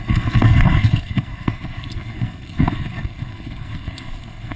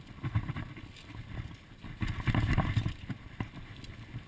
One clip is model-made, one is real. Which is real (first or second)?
second